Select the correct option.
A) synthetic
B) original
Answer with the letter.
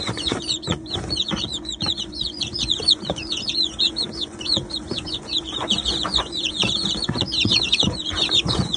A